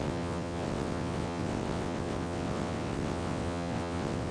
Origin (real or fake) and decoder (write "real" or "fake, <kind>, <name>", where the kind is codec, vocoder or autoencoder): fake, vocoder, WaveNeXt